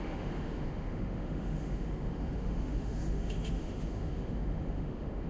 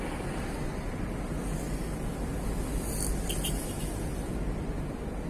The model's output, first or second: first